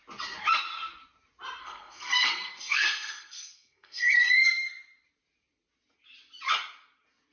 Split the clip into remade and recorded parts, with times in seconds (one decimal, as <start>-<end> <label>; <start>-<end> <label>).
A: 0.0-1.6 recorded; 1.6-4.7 remade; 4.7-7.3 recorded